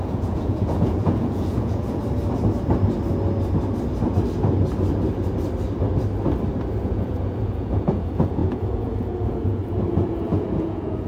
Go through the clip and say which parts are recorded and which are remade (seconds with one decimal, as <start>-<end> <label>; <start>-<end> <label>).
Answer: 0.0-2.0 remade; 2.0-6.8 recorded; 6.8-11.1 remade